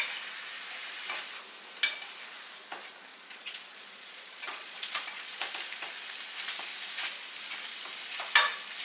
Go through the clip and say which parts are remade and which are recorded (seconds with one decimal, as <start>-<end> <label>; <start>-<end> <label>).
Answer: 0.0-3.1 recorded; 3.1-5.5 remade; 5.5-8.8 recorded